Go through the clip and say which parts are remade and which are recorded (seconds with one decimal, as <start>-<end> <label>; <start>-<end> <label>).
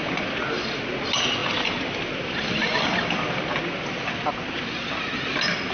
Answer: 0.0-0.9 remade; 0.9-1.4 recorded; 1.4-3.6 remade; 3.6-5.7 recorded